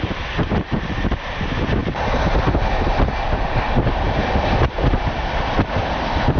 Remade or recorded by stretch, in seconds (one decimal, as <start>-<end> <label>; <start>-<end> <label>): 0.0-1.8 remade; 1.8-2.7 recorded; 2.7-6.4 remade